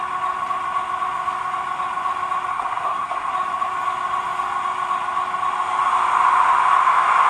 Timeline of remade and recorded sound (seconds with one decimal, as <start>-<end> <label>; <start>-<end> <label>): 0.0-2.5 recorded; 2.5-3.3 remade; 3.3-7.3 recorded